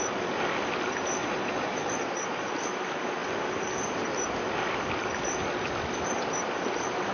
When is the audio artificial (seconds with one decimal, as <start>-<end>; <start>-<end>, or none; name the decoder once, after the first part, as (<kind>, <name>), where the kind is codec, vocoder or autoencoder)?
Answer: 1.2-2.5 (vocoder, Vocos)